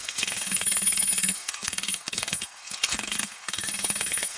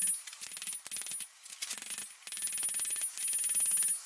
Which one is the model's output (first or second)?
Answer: first